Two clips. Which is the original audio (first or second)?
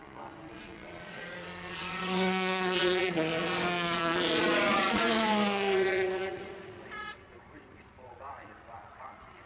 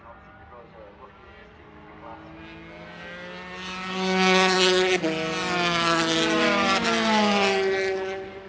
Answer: second